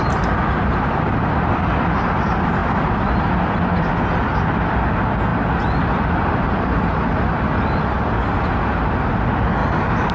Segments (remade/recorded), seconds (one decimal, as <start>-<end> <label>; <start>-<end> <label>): 0.0-10.1 recorded